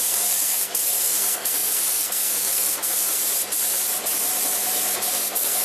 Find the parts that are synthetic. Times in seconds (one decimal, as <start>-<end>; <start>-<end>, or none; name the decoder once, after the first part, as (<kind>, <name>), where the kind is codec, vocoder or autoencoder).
0.0-3.2 (codec, SNAC); 5.1-5.6

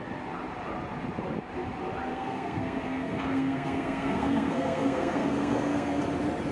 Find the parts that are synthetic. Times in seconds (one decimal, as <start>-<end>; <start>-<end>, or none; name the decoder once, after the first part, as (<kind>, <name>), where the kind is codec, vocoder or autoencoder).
2.1-6.0 (codec, SNAC)

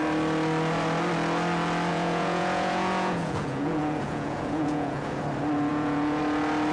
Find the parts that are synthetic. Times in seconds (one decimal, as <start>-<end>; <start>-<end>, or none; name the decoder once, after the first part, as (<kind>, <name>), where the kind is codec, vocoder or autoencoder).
1.9-5.2 (vocoder, Vocos); 5.7-6.2

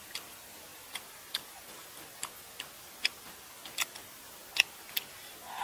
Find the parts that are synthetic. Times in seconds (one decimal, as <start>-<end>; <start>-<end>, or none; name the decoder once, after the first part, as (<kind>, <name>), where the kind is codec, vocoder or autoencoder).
0.0-0.7 (vocoder, BigVGAN v2); 4.0-4.4

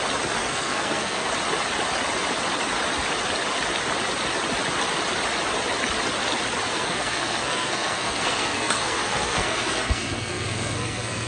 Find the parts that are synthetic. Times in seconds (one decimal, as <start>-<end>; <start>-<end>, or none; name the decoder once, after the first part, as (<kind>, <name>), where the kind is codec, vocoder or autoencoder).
0.4-1.3 (codec, SNAC); 6.7-11.3

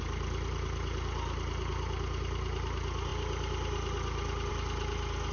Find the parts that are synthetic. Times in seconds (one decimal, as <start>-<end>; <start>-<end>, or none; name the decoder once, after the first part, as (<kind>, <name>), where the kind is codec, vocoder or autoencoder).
none

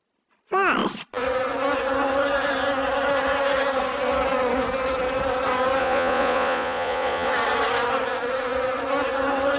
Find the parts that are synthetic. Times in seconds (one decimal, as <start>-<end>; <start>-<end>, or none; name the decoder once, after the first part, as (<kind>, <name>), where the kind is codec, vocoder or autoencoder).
5.8-7.3 (vocoder, Vocos)

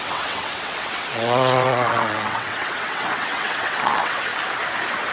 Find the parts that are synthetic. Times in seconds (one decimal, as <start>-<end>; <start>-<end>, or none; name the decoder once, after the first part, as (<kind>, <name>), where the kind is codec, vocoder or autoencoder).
0.0-4.3 (vocoder, WaveNeXt)